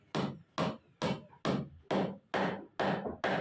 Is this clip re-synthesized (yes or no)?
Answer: no